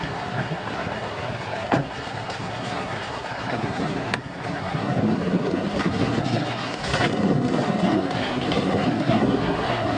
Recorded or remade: remade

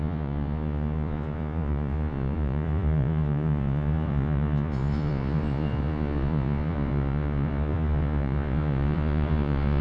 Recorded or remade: remade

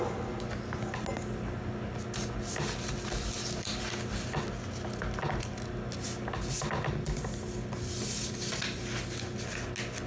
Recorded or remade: recorded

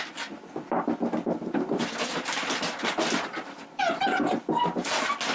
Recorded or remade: recorded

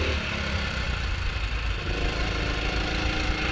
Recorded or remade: recorded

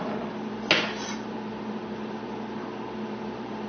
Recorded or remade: recorded